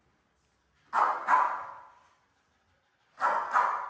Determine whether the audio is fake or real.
real